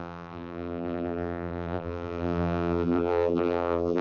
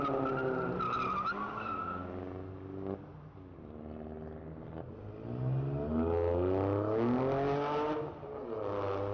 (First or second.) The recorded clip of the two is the second